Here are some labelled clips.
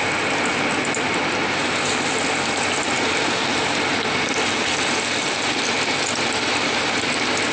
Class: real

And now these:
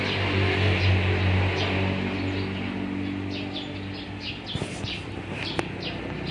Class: real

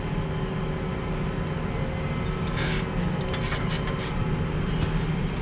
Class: real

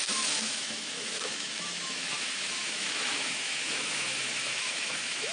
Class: fake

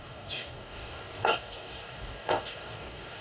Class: fake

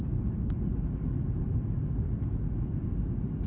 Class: real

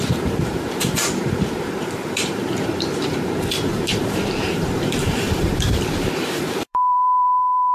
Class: fake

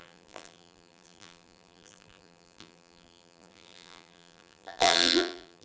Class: fake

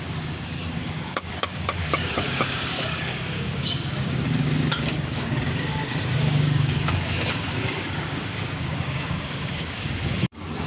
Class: fake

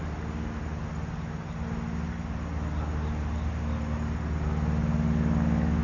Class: real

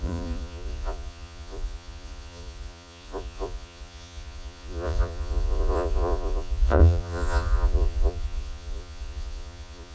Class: fake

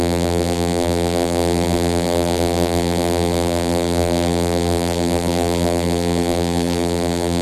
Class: fake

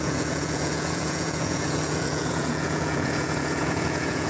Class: fake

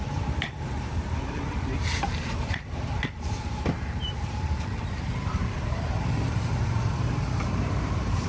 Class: fake